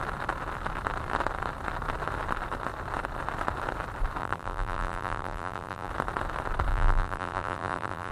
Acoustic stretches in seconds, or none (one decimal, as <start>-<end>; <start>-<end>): 0.0-4.2; 5.9-6.7